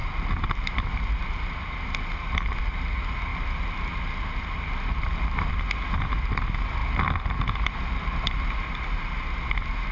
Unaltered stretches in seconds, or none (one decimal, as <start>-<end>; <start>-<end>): 0.0-9.9